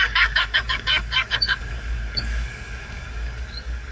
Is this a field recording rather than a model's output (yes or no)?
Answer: no